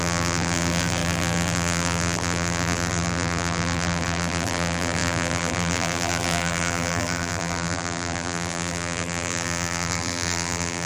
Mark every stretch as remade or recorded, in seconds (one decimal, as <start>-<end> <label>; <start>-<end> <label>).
0.0-10.9 remade